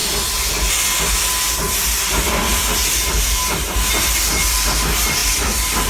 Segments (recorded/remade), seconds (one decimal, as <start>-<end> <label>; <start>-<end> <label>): 0.0-2.5 recorded; 2.5-3.9 remade; 3.9-5.9 recorded